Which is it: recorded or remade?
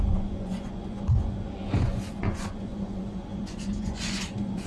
remade